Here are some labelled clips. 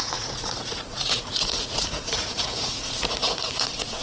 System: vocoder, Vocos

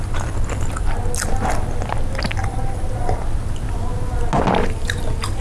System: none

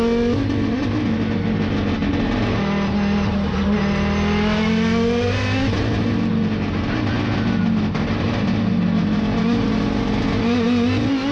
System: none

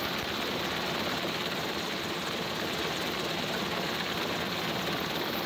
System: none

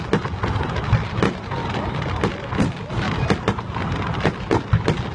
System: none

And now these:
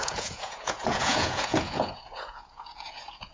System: vocoder, Vocos